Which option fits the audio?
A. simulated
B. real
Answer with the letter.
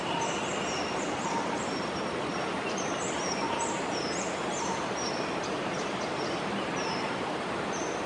A